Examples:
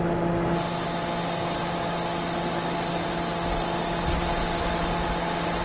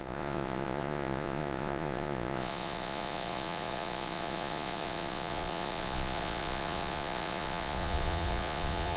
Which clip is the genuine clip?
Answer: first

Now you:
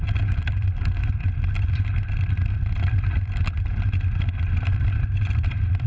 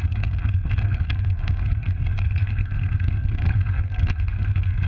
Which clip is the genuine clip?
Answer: first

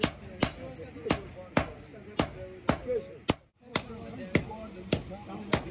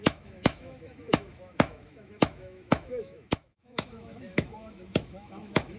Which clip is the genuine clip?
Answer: first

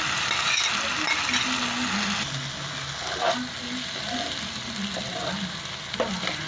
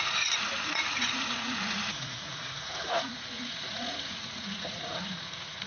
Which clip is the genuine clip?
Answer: first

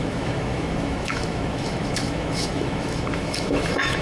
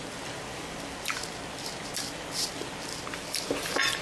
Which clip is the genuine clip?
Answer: second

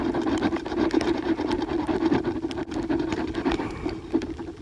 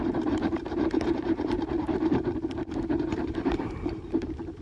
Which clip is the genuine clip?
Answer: first